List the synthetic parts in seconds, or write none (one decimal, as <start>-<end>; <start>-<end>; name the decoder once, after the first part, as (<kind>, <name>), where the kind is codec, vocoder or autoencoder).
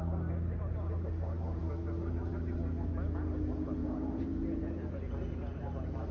3.8-4.6 (vocoder, Vocos)